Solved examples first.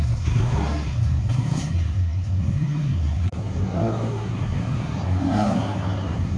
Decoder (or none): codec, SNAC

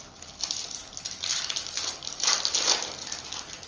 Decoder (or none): none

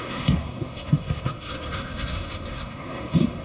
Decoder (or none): codec, SNAC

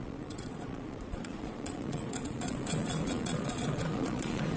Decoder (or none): vocoder, Vocos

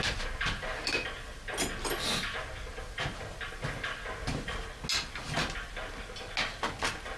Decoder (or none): none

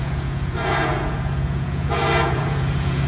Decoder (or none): vocoder, Vocos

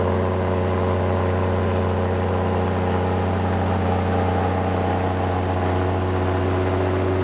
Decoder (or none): none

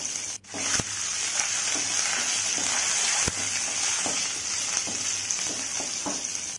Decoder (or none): none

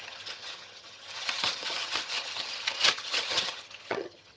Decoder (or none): vocoder, HiFi-GAN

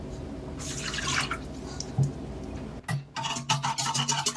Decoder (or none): none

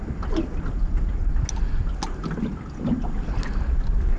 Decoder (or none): none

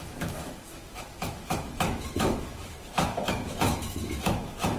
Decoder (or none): autoencoder, DAC-VAE